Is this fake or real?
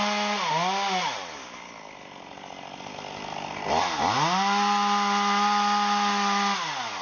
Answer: real